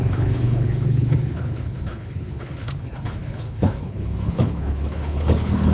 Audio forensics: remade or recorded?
remade